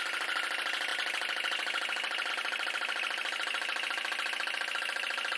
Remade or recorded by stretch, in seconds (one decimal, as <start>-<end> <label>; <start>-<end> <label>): 0.0-5.4 recorded